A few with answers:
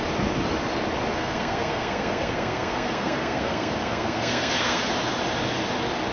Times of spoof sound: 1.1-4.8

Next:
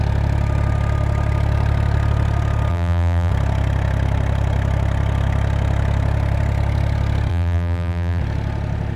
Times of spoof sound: 2.7-3.3; 7.3-8.2

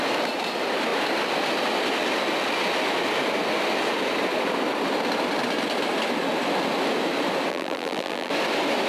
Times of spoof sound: 7.5-8.3

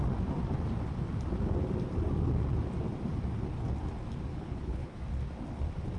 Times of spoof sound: 4.3-5.0